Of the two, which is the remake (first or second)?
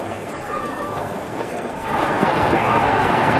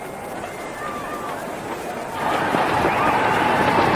first